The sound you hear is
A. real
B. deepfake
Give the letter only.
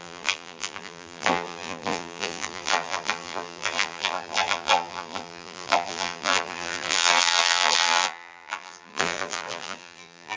B